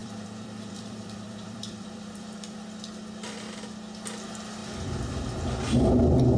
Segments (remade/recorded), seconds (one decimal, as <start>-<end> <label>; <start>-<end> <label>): 0.0-2.6 remade; 2.6-4.6 recorded; 4.6-5.3 remade; 5.3-6.4 recorded